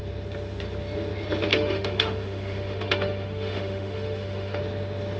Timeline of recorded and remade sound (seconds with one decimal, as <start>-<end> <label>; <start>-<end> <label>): 0.0-1.5 recorded; 1.5-4.6 remade; 4.6-5.2 recorded